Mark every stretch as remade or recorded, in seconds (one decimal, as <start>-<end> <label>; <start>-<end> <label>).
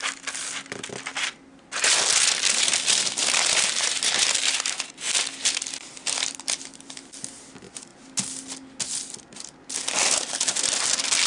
0.0-3.2 recorded; 3.2-3.9 remade; 3.9-11.3 recorded